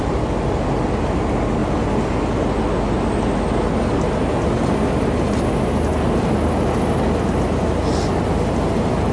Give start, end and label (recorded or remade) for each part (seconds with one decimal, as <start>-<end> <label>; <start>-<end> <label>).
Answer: 0.0-9.1 recorded